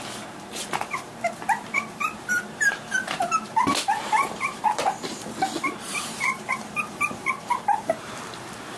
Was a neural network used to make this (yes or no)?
yes